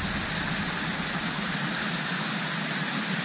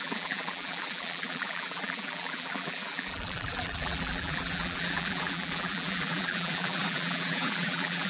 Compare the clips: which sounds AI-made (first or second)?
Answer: second